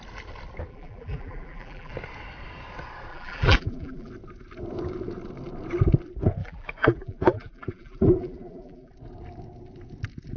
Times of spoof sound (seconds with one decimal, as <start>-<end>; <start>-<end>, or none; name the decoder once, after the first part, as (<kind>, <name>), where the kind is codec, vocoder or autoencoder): 0.7-1.9 (vocoder, BigVGAN v2); 3.1-4.1; 6.4-8.9